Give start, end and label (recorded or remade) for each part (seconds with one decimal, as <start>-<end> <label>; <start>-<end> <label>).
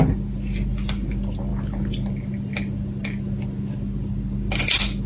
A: 0.0-5.1 recorded